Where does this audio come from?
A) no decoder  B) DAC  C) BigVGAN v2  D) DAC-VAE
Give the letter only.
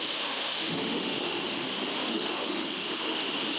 D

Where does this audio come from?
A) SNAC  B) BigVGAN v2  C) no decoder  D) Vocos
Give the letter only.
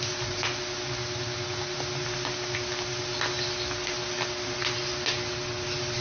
C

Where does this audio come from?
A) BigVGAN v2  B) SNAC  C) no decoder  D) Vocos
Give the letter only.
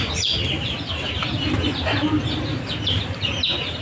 C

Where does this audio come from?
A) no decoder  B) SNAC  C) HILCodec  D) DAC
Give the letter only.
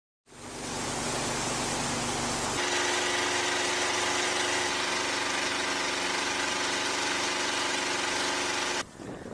A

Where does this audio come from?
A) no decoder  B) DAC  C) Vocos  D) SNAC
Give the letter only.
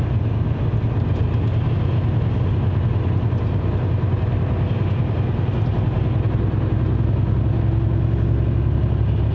A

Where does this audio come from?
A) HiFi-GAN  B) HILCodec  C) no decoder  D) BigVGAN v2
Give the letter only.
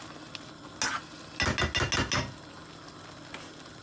C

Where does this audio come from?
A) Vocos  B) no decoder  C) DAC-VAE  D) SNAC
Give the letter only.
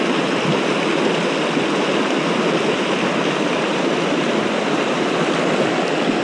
B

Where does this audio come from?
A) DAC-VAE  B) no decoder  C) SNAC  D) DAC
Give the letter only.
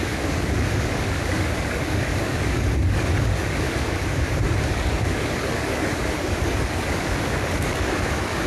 D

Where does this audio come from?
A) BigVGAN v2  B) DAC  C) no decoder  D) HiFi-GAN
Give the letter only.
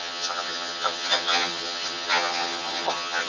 D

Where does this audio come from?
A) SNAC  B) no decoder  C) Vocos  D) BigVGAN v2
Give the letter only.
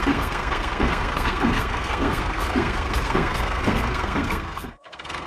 A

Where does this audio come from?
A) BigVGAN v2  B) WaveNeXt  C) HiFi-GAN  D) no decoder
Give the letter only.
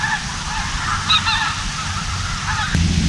D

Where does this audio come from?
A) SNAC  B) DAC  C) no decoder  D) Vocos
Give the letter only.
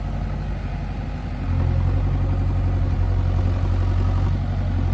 C